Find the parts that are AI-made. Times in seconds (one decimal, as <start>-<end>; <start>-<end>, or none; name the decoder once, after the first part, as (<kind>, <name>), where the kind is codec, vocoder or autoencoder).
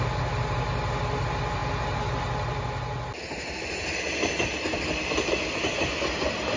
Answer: none